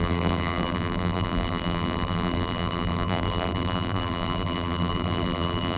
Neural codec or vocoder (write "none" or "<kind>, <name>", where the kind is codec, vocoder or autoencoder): vocoder, BigVGAN v2